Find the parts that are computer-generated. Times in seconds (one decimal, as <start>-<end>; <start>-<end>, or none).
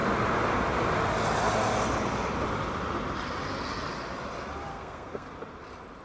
4.7-5.3